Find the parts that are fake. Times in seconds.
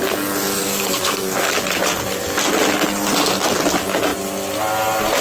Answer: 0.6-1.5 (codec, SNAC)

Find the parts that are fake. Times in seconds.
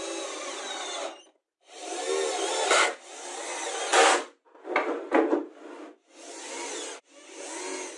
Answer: none